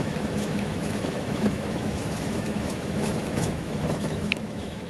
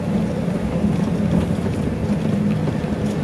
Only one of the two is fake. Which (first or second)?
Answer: first